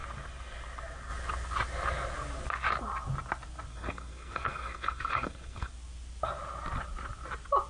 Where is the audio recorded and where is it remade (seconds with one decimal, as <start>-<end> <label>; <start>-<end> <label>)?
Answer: 0.0-3.7 recorded; 3.7-5.7 remade; 5.7-7.7 recorded